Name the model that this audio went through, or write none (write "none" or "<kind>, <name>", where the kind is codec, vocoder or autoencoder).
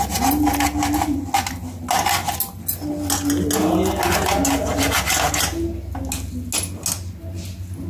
none